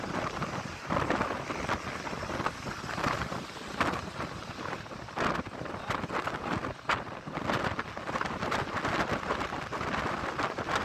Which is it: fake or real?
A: real